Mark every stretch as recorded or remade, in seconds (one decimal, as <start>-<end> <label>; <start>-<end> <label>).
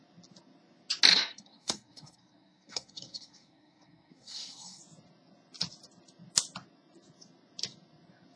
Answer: 0.0-1.1 recorded; 1.1-4.8 remade; 4.8-8.4 recorded